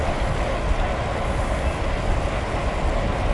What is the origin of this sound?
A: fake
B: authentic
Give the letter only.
B